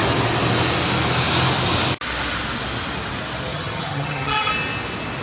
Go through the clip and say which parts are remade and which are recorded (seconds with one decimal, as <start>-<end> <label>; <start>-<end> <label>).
0.0-3.5 recorded; 3.5-4.5 remade; 4.5-5.2 recorded